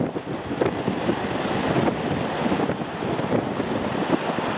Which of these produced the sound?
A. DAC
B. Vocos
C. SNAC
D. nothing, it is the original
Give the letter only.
D